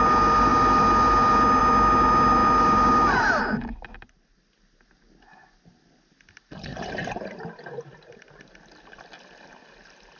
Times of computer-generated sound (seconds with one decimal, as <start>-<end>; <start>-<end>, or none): none